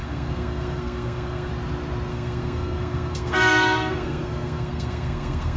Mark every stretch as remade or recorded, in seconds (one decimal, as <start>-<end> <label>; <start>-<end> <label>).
0.0-1.5 remade; 1.5-2.1 recorded; 2.1-5.6 remade

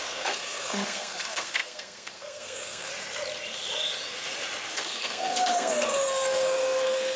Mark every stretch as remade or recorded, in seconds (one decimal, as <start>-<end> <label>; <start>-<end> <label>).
0.0-2.9 remade; 2.9-4.7 recorded; 4.7-7.2 remade

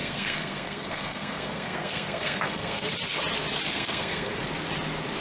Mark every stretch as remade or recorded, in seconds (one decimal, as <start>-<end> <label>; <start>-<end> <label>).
0.0-2.9 remade; 2.9-3.7 recorded; 3.7-4.3 remade; 4.3-5.2 recorded

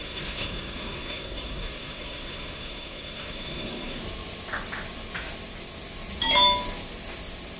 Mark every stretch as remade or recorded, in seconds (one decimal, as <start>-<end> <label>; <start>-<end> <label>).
0.0-4.0 remade; 4.0-7.6 recorded

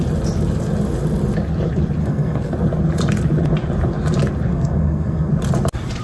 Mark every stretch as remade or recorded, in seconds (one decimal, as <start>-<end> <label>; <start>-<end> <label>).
0.0-2.0 recorded; 2.0-2.5 remade; 2.5-4.5 recorded; 4.5-5.3 remade; 5.3-6.0 recorded

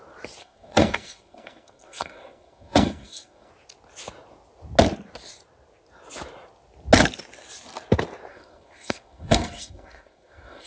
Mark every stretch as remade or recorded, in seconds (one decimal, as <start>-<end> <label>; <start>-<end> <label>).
0.0-0.4 recorded; 0.4-3.5 remade; 3.5-8.3 recorded; 8.3-10.7 remade